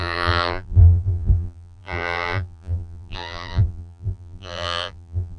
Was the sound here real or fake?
fake